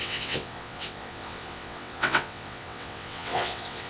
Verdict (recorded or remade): remade